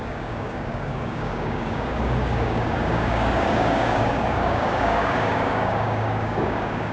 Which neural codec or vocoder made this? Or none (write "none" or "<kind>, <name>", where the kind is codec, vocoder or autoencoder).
codec, DAC